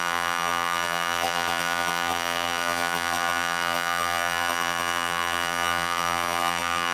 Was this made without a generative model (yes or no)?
no